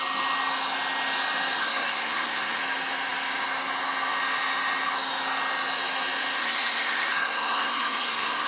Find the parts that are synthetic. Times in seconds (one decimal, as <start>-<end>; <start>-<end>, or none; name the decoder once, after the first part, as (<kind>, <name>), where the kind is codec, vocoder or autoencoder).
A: 1.6-2.6 (codec, SNAC); 6.4-8.5